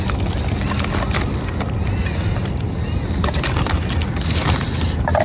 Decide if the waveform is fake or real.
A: real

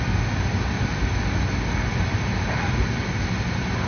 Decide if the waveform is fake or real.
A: real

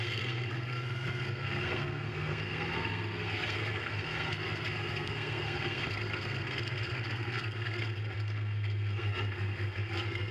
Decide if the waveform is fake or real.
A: fake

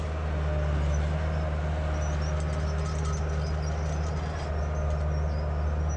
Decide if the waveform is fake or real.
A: real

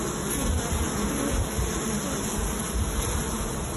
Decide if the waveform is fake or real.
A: real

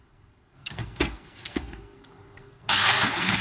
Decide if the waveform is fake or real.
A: fake